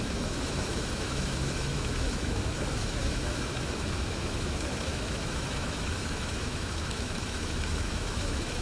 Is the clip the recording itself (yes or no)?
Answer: no